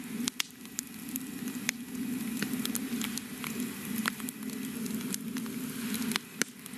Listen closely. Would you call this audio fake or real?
real